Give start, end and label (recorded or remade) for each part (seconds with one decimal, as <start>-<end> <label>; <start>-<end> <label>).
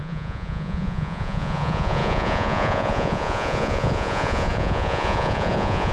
0.0-5.9 remade